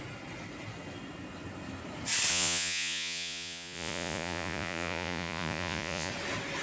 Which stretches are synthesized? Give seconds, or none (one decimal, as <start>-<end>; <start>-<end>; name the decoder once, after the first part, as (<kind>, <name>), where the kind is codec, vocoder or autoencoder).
2.3-6.1 (vocoder, Vocos)